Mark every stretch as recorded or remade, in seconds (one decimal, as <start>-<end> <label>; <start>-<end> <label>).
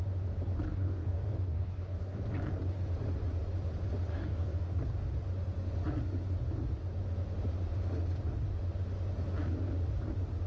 0.0-0.7 recorded; 0.7-2.2 remade; 2.2-4.1 recorded; 4.1-4.8 remade; 4.8-10.5 recorded